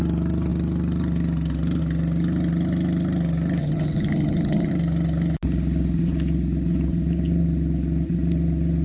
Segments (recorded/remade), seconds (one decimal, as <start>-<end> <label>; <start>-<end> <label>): 0.0-3.6 recorded; 3.6-4.7 remade; 4.7-8.8 recorded